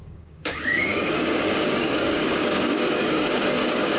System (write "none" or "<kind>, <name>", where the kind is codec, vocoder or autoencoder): codec, DAC